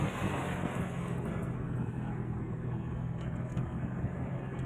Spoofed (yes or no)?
yes